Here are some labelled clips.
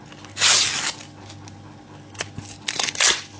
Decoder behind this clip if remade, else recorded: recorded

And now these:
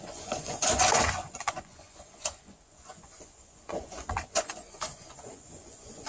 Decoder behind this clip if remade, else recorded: remade, vocoder, Vocos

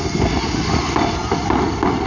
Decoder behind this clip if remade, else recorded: recorded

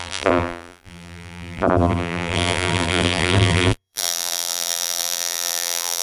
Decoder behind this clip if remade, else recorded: remade, vocoder, BigVGAN v2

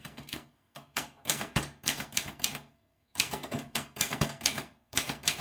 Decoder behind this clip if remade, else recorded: remade, codec, SNAC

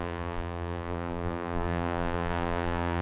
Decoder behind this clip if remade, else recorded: remade, vocoder, BigVGAN v2